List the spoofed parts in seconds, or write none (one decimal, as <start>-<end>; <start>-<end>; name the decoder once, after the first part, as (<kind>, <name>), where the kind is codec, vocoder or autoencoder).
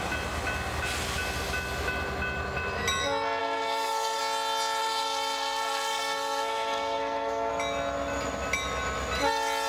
3.4-4.2 (codec, SNAC); 4.8-7.5